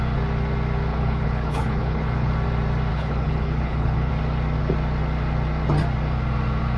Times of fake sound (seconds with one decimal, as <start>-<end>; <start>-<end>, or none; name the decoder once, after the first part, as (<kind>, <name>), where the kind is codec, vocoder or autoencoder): 0.9-2.3 (codec, HILCodec); 2.9-4.1

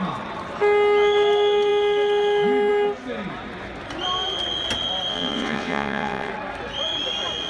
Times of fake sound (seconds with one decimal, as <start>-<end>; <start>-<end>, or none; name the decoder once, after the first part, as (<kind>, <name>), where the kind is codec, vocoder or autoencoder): 5.1-6.3 (vocoder, WaveNeXt)

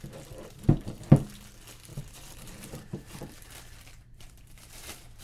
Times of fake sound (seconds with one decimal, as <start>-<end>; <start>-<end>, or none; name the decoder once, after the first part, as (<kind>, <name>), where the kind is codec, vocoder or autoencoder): 1.9-5.2 (vocoder, BigVGAN v2)

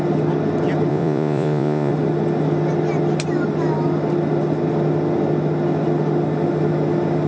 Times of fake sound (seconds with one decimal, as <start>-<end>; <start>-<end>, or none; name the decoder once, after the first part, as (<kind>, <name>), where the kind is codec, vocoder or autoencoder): 0.9-1.9 (vocoder, Vocos)

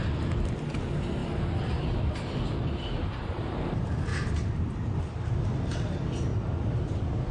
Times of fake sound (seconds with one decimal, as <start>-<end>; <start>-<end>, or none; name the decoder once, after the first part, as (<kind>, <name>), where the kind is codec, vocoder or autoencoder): 1.2-3.4 (vocoder, BigVGAN v2); 4.1-5.0; 6.3-7.3